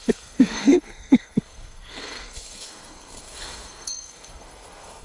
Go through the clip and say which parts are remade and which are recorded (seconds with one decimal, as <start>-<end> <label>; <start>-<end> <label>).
0.0-5.0 remade